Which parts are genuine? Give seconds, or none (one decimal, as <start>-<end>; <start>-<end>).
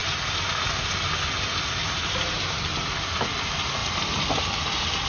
0.0-5.1